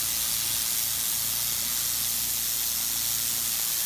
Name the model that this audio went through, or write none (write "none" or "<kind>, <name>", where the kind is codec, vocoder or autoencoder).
none